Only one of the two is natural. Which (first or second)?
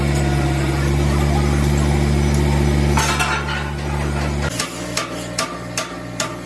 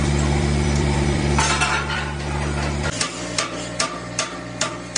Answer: first